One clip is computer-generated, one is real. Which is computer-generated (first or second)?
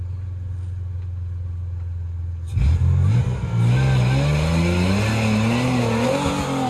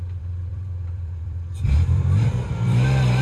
second